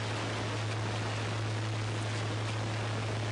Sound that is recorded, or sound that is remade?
recorded